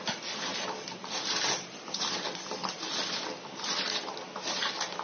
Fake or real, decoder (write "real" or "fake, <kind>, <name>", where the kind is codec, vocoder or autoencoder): real